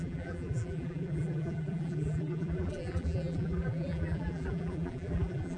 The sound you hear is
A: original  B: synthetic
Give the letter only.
B